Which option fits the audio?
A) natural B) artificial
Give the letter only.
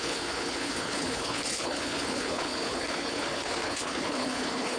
B